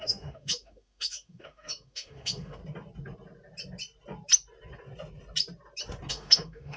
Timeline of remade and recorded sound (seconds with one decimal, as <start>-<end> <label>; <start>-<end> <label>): 0.0-2.6 remade; 2.6-6.1 recorded; 6.1-6.8 remade